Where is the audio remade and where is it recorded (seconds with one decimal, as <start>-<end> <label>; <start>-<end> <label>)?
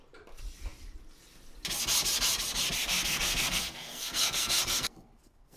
0.0-2.8 recorded; 2.8-5.6 remade